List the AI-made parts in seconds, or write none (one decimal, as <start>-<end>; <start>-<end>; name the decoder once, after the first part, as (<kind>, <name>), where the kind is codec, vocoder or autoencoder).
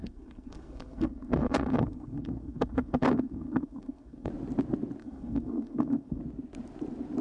0.0-4.3 (codec, SNAC); 5.0-6.2